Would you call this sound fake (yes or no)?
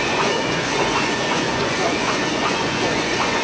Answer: yes